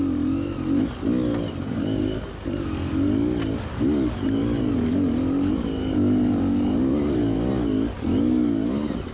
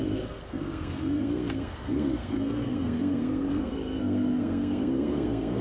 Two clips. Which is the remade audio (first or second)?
second